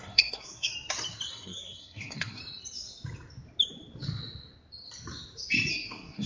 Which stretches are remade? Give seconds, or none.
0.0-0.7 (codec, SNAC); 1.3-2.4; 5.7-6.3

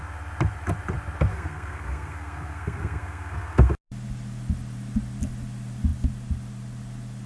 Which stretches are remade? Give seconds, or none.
1.3-3.7 (codec, SNAC)

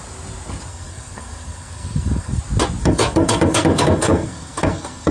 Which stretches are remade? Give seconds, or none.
0.7-2.4 (codec, SNAC); 2.8-5.1

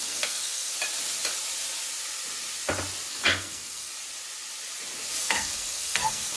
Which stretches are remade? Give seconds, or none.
0.0-0.7 (codec, SNAC); 3.1-3.9; 5.2-6.4